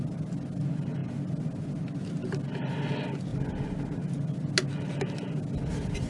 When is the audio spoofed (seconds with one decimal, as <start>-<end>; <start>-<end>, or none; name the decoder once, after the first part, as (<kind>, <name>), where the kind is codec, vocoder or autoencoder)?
none